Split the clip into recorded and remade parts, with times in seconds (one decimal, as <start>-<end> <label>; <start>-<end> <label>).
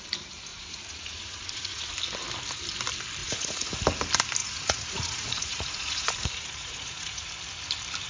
0.0-0.5 recorded; 0.5-1.9 remade; 1.9-3.2 recorded; 3.2-3.8 remade; 3.8-4.4 recorded; 4.4-7.3 remade; 7.3-8.1 recorded